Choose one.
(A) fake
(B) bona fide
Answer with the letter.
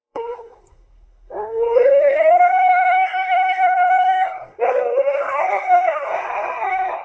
A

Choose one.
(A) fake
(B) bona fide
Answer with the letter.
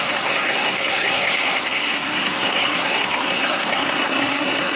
A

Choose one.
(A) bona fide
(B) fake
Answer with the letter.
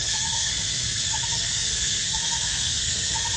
B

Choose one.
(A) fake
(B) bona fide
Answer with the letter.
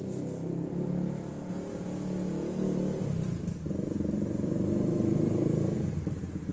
B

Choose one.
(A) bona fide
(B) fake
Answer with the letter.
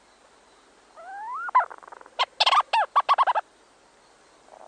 A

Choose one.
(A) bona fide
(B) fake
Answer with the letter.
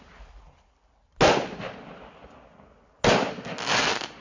A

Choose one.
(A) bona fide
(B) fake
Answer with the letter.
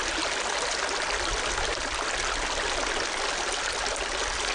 A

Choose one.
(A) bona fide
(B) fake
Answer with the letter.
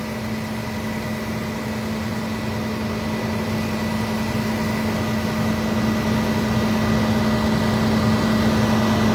A